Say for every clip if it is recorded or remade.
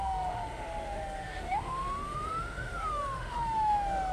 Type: remade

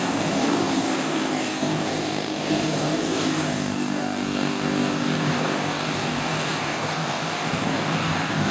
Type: remade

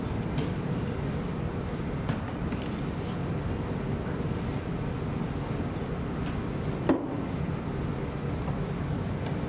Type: recorded